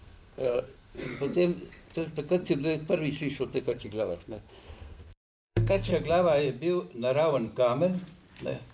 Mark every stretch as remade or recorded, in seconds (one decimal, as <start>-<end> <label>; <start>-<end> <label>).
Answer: 0.0-1.1 remade; 1.1-3.6 recorded; 3.6-5.9 remade; 5.9-8.7 recorded